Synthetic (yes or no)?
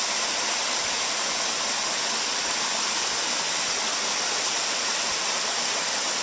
no